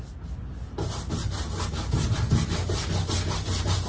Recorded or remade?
recorded